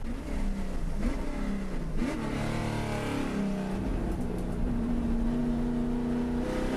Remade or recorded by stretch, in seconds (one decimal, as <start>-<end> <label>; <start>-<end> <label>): 0.0-3.9 recorded; 3.9-4.9 remade; 4.9-6.8 recorded